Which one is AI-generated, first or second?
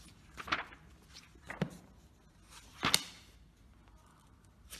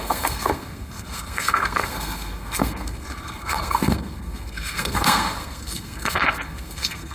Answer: second